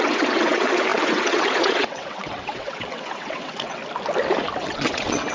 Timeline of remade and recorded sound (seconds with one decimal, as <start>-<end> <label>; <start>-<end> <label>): 0.0-3.8 remade; 3.8-4.6 recorded; 4.6-5.3 remade